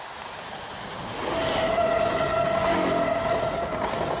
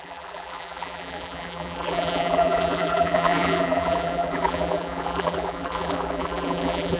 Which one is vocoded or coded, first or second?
second